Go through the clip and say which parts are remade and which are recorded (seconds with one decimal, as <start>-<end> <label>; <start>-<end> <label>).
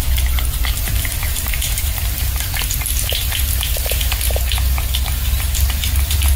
0.0-1.2 recorded; 1.2-2.0 remade; 2.0-6.4 recorded